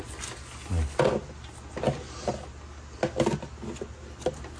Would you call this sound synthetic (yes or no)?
no